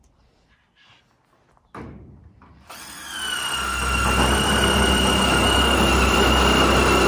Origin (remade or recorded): recorded